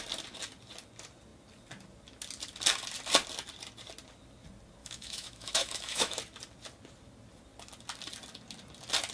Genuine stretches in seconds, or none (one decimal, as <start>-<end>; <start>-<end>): 0.0-4.8; 6.2-9.1